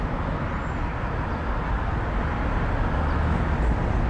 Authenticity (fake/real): real